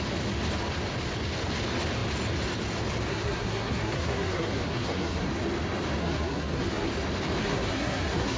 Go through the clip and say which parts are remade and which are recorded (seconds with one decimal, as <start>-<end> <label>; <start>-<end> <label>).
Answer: 0.0-3.1 recorded; 3.1-5.3 remade; 5.3-6.0 recorded; 6.0-6.9 remade; 6.9-7.4 recorded; 7.4-8.4 remade